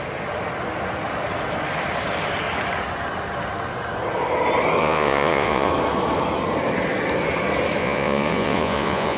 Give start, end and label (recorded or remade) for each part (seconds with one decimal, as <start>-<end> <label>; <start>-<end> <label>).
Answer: 0.0-4.8 recorded; 4.8-5.7 remade; 5.7-7.8 recorded; 7.8-9.2 remade